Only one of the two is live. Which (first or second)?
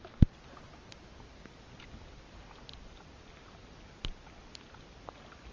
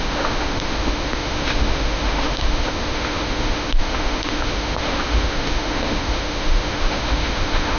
first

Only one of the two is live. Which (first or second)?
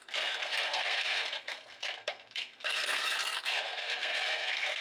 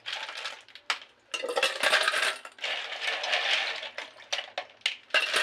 second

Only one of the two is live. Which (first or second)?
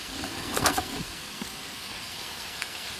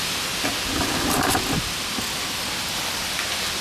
second